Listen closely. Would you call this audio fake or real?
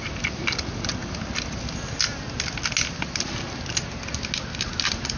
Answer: real